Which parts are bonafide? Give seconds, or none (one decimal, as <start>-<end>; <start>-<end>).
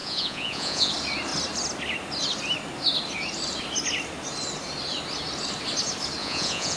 0.9-6.2